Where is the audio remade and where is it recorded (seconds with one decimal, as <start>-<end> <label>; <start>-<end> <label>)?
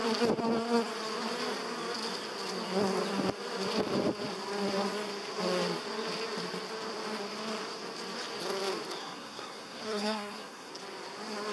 0.0-9.0 recorded; 9.0-10.7 remade; 10.7-11.5 recorded